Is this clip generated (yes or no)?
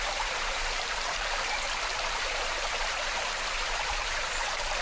yes